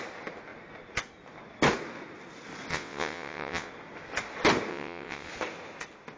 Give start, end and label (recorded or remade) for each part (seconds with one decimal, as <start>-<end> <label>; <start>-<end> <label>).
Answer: 0.0-2.7 recorded; 2.7-3.7 remade; 3.7-4.7 recorded; 4.7-5.3 remade; 5.3-6.2 recorded